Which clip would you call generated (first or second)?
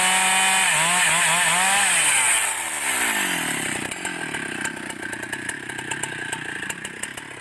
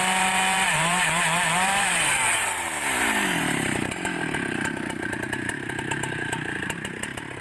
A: second